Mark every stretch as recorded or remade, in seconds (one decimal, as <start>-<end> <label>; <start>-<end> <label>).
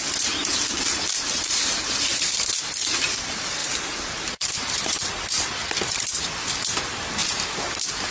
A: 0.0-0.4 recorded; 0.4-2.5 remade; 2.5-3.6 recorded; 3.6-5.1 remade; 5.1-8.1 recorded